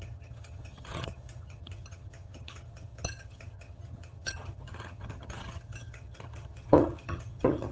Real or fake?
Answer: fake